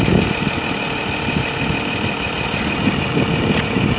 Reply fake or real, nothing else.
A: real